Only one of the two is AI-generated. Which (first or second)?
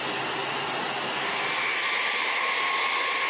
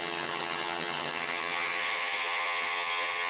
second